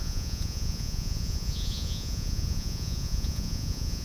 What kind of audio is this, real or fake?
fake